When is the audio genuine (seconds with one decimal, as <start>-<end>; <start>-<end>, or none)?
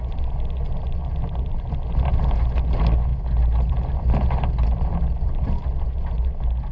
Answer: 0.0-3.1; 5.4-6.7